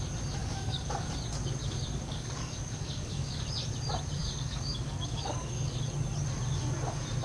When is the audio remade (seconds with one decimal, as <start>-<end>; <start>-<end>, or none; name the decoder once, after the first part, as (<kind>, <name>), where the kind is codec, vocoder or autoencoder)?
0.4-1.1 (codec, DAC); 1.6-3.4; 4.2-5.7